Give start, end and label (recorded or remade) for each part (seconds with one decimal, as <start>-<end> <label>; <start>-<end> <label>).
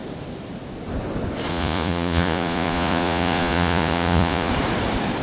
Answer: 0.0-1.5 recorded; 1.5-4.5 remade; 4.5-5.2 recorded